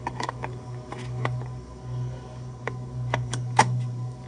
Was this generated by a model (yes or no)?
yes